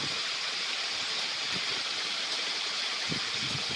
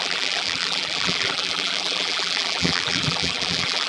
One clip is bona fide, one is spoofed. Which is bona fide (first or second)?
first